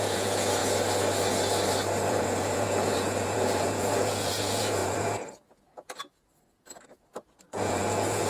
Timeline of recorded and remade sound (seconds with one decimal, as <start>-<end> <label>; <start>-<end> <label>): 0.0-0.6 remade; 0.6-2.1 recorded; 2.1-8.3 remade